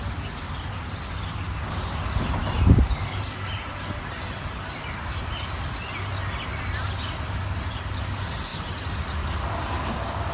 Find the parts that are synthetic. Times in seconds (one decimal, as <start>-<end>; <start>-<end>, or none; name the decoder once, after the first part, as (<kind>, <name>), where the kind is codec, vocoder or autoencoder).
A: none